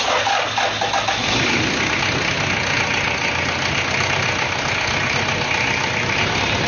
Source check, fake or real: real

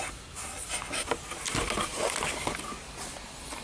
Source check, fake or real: real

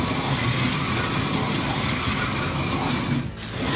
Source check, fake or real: real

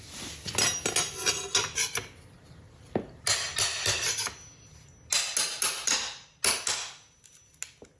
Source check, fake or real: real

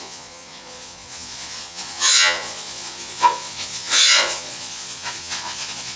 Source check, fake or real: fake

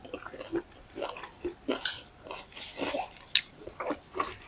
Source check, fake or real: real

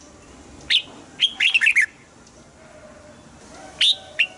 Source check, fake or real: real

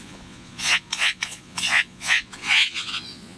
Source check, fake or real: fake